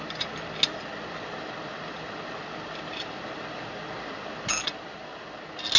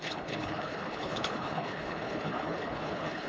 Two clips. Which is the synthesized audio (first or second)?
second